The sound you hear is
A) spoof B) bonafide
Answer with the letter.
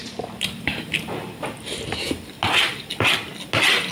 B